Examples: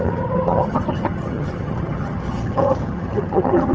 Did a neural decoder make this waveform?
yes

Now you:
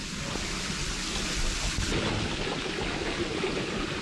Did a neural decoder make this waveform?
no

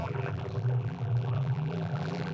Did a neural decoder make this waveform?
yes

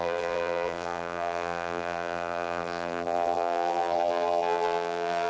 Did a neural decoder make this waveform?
yes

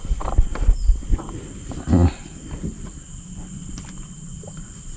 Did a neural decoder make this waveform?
no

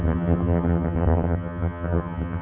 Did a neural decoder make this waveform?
yes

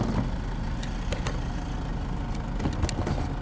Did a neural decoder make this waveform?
no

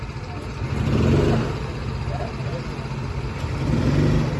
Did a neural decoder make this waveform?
no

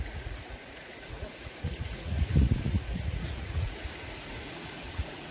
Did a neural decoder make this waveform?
yes